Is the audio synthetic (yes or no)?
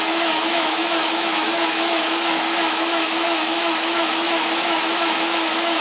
yes